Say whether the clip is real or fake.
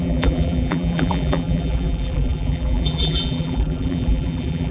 fake